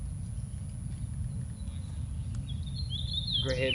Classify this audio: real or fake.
real